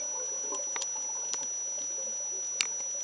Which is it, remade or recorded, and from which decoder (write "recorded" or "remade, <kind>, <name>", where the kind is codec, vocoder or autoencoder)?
recorded